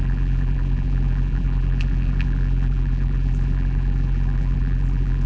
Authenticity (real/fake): fake